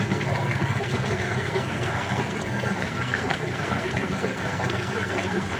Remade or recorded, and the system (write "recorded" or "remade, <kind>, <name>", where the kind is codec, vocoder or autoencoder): remade, codec, SNAC